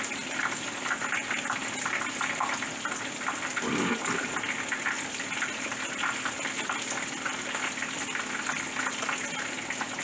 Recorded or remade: recorded